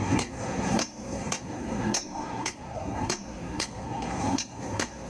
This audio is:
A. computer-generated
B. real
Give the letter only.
A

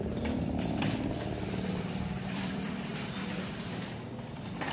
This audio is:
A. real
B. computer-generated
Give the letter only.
B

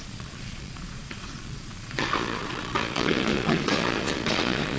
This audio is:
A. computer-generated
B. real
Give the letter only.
A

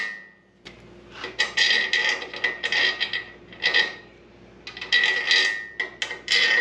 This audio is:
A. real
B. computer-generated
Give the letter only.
A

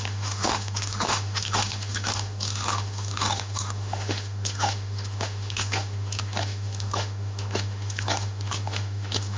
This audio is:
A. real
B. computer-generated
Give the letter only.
B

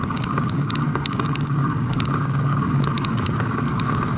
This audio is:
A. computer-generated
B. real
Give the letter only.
A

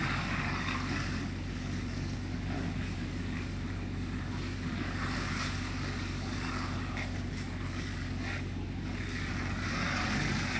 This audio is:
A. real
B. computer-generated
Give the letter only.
B